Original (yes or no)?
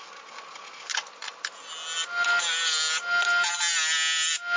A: yes